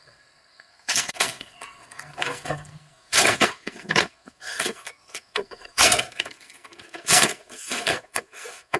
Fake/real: fake